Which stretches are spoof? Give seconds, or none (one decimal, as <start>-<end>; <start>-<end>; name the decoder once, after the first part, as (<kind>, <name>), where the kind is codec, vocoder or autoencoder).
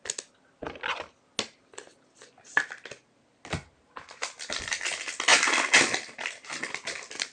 none